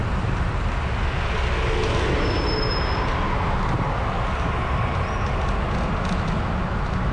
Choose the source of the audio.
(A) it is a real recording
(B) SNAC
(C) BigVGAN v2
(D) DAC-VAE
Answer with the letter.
A